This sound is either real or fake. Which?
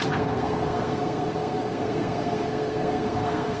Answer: fake